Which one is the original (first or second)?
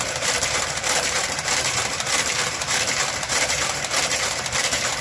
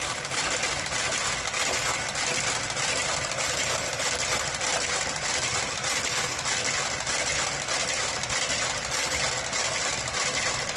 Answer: second